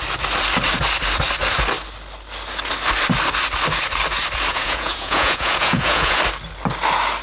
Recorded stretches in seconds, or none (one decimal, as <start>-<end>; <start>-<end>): 0.0-4.5; 6.2-7.2

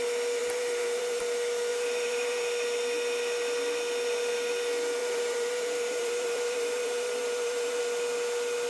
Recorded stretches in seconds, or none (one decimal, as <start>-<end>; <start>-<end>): 0.0-0.4; 1.2-1.7; 2.4-5.0; 7.8-8.7

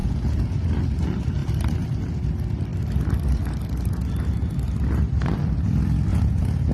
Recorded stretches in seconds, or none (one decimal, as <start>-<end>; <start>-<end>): 0.7-6.1

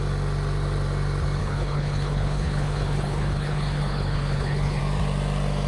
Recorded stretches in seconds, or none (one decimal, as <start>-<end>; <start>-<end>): 0.0-1.4; 4.8-5.7

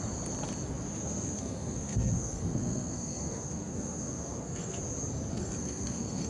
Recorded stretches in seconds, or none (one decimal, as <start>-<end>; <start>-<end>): 0.0-1.0; 4.8-5.3

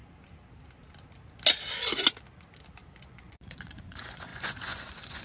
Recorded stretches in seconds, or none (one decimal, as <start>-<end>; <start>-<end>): 0.0-3.1

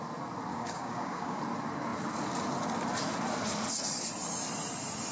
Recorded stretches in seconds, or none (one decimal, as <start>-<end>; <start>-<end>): 0.0-0.5; 1.4-5.1

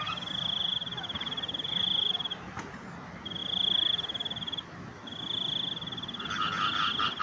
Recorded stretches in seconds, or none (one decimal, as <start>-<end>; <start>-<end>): 0.0-0.6; 2.8-7.2